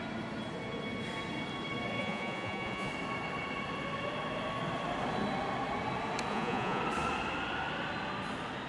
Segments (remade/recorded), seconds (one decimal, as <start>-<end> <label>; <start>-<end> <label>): 0.0-2.0 recorded; 2.0-2.9 remade; 2.9-6.3 recorded; 6.3-6.8 remade; 6.8-8.7 recorded